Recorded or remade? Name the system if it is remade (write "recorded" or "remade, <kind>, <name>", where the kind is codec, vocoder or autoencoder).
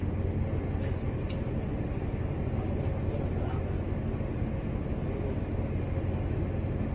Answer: recorded